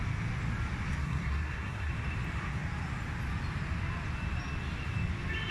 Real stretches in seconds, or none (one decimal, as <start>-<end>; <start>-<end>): 0.0-1.0; 1.9-5.5